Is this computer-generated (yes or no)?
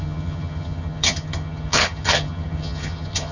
yes